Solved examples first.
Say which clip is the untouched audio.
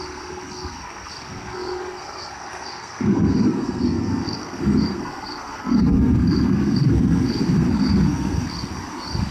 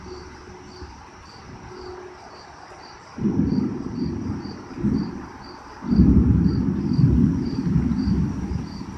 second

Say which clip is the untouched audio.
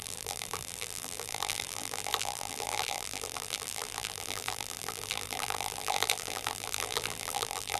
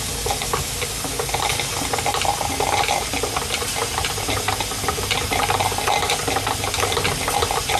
second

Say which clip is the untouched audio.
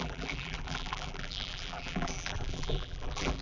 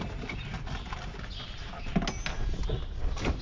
second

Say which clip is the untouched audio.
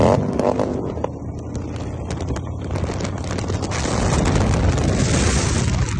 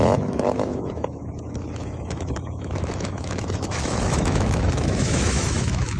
first